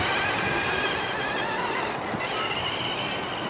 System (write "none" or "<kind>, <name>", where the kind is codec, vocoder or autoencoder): none